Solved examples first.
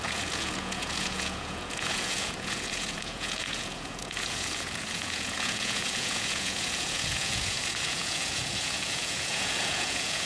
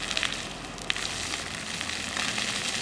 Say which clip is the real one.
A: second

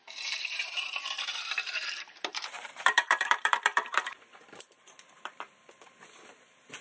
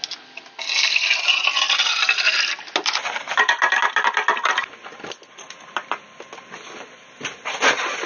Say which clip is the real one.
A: second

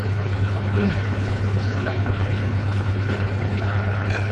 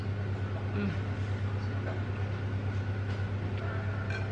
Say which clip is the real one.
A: second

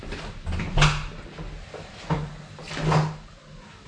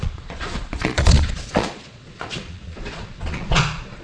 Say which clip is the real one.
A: first